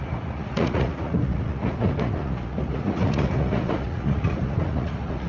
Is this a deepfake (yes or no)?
yes